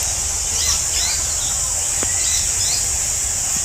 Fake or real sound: real